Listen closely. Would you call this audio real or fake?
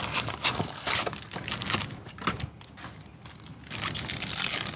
real